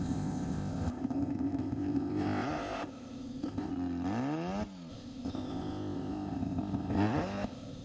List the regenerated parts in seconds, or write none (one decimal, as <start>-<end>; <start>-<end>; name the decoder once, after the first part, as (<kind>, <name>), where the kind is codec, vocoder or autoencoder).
0.0-3.7 (codec, ZipCodec); 4.9-7.8